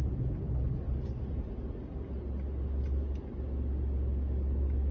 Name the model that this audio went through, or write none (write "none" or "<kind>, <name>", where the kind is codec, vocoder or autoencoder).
none